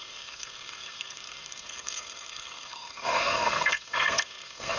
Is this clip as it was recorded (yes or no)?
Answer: no